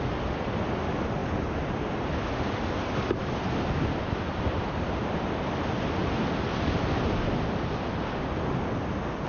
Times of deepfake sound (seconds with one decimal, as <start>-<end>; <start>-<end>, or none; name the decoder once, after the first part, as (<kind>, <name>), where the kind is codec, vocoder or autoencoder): none